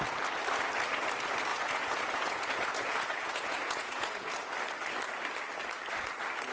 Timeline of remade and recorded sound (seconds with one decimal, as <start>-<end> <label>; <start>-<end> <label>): 0.0-1.5 recorded; 1.5-4.3 remade; 4.3-6.5 recorded